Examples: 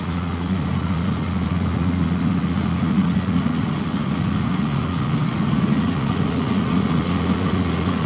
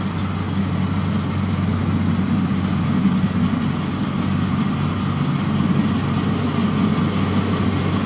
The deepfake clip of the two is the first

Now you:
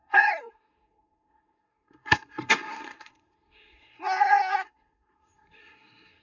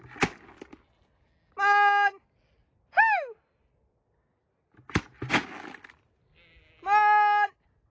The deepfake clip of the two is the first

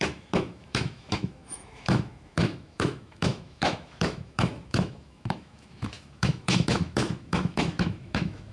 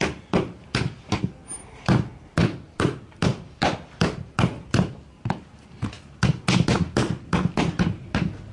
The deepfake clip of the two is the first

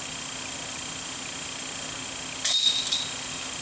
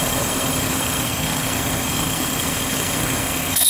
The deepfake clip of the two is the second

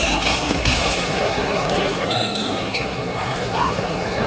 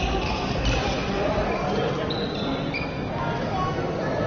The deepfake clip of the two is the first